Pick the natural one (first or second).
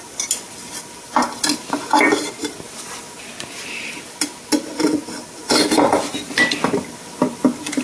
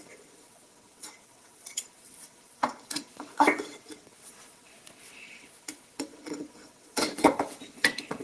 first